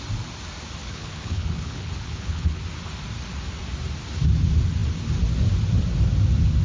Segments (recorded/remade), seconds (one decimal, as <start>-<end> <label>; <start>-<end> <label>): 0.0-0.8 recorded; 0.8-2.6 remade; 2.6-6.6 recorded